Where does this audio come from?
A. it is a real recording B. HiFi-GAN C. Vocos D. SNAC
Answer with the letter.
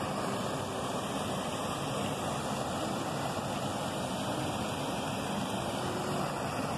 A